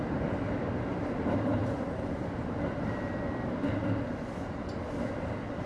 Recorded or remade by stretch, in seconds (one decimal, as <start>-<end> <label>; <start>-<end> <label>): 0.0-1.6 recorded; 1.6-2.3 remade; 2.3-5.7 recorded